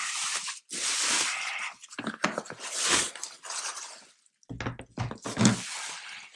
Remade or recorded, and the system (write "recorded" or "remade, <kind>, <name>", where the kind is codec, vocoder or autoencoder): recorded